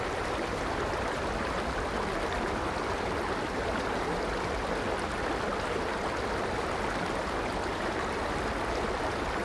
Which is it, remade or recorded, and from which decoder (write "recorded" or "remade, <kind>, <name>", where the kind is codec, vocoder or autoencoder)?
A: recorded